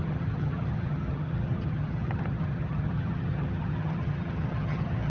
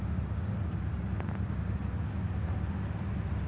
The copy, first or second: first